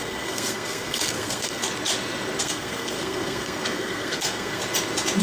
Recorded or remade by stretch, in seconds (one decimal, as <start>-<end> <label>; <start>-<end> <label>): 0.0-1.6 remade; 1.6-2.4 recorded; 2.4-4.6 remade; 4.6-5.2 recorded

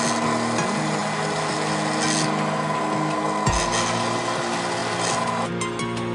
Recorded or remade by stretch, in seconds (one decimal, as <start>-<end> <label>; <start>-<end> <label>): 0.0-6.1 recorded

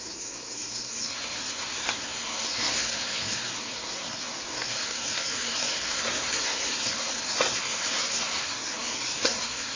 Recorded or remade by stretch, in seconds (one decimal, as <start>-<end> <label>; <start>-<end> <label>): 0.0-9.8 remade